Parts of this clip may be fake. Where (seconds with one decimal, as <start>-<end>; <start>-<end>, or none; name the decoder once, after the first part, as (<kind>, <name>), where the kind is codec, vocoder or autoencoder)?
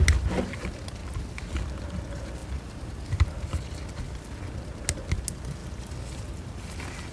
2.4-4.0 (vocoder, BigVGAN v2)